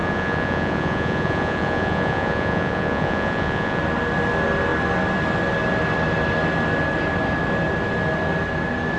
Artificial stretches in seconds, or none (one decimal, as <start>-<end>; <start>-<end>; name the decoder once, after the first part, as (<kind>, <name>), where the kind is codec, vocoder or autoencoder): 0.0-3.8 (vocoder, Vocos)